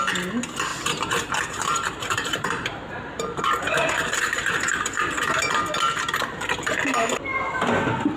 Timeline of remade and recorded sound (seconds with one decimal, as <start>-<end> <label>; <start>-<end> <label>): 0.0-0.7 recorded; 0.7-5.4 remade; 5.4-8.2 recorded